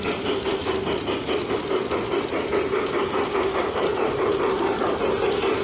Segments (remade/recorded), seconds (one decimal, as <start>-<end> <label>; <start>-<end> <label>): 0.0-3.9 recorded; 3.9-4.8 remade; 4.8-5.6 recorded